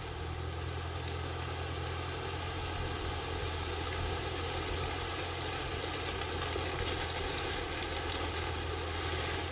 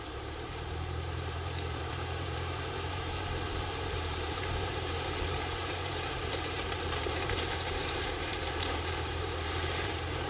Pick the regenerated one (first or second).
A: second